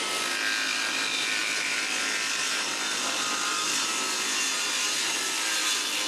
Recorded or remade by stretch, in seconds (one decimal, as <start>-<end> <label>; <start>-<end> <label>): 0.0-1.4 recorded; 1.4-3.6 remade; 3.6-6.1 recorded

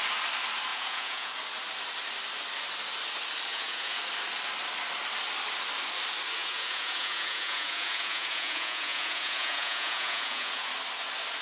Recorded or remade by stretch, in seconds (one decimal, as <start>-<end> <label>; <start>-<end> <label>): 0.0-0.7 recorded; 0.7-1.3 remade; 1.3-3.5 recorded; 3.5-4.0 remade; 4.0-6.4 recorded; 6.4-10.7 remade; 10.7-11.4 recorded

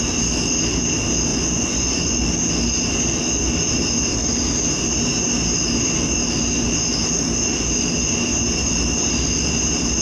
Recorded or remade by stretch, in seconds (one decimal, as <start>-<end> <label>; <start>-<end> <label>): 0.0-1.3 recorded; 1.3-2.2 remade; 2.2-10.0 recorded

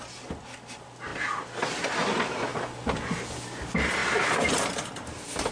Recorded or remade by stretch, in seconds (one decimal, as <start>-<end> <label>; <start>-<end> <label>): 0.0-5.5 recorded